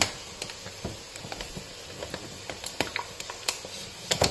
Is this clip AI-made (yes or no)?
no